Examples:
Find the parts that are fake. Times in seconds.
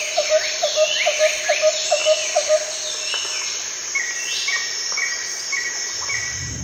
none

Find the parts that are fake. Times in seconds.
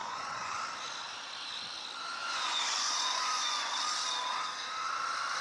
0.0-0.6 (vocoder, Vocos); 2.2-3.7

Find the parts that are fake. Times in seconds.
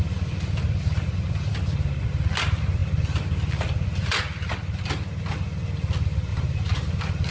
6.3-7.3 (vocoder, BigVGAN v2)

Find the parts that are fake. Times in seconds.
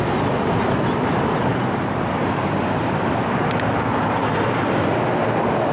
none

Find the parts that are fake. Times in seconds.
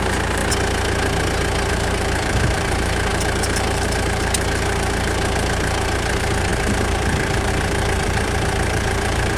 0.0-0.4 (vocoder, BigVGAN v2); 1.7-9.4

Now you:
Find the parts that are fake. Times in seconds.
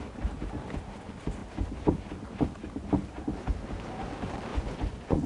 4.5-5.3 (vocoder, Vocos)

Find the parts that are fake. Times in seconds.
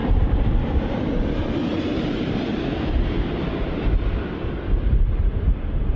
0.0-2.4 (vocoder, BigVGAN v2)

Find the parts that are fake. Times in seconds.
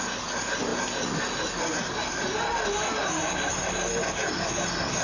none